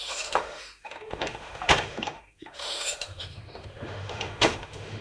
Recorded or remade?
remade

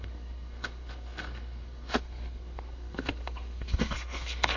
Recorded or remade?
remade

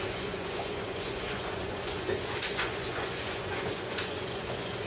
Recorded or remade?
remade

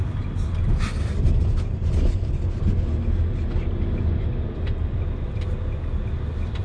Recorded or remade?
recorded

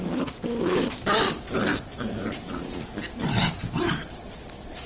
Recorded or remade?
remade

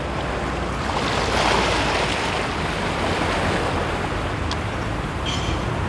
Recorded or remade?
recorded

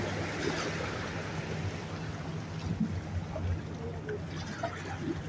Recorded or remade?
recorded